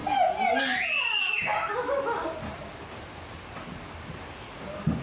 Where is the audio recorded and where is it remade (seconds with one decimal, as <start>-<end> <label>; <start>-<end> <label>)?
0.0-5.0 recorded